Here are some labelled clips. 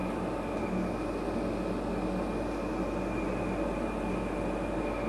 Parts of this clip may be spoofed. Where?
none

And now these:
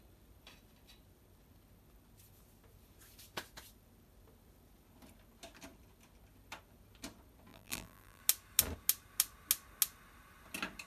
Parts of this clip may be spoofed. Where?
7.5-8.2